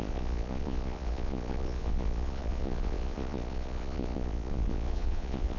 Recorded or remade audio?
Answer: remade